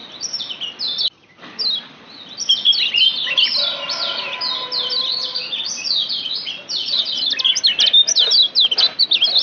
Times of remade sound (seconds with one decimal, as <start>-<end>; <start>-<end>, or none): 5.1-7.3